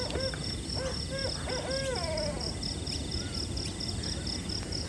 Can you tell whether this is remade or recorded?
recorded